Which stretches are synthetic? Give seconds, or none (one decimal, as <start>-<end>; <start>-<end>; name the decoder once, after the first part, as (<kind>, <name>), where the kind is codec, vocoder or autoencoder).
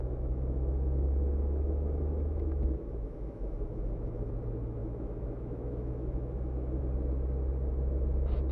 0.0-4.3 (autoencoder, DAC-VAE); 4.8-6.8